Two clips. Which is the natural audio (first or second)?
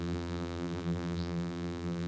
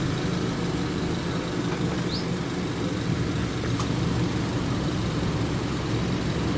second